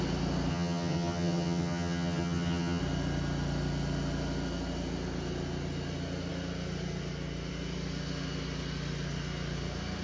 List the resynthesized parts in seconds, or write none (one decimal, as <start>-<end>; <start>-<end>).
0.5-2.8